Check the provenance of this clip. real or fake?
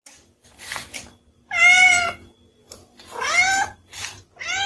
real